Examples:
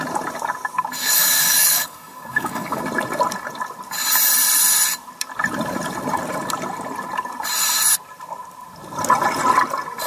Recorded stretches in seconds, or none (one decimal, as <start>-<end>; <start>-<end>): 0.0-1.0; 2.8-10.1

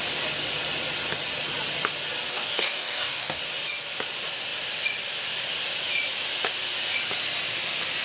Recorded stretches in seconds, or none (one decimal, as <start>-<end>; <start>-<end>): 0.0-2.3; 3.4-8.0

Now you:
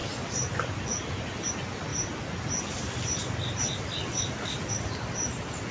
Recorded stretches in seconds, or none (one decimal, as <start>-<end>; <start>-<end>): 0.0-5.7

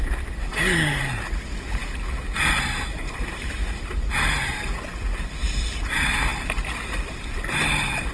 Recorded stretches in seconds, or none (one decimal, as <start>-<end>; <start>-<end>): 0.0-0.5; 1.0-8.1

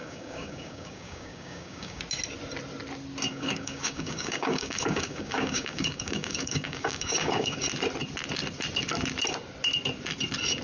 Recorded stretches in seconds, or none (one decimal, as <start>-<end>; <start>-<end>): 2.0-3.3; 7.6-10.6

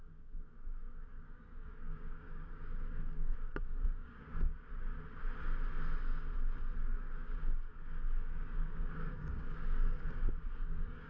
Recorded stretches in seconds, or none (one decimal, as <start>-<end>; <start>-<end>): 4.9-6.8

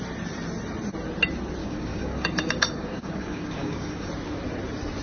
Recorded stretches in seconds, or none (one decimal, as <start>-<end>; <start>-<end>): 0.0-1.6; 4.1-5.0

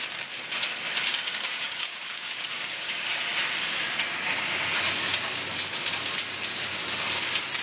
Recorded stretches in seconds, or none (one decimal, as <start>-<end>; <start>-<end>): 0.0-1.1; 3.2-7.6